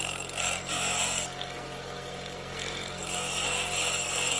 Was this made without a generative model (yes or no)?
no